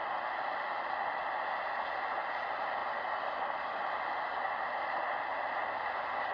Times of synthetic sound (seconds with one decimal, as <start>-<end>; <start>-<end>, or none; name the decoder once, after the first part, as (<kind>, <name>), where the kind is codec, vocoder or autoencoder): 2.8-3.7 (vocoder, BigVGAN v2)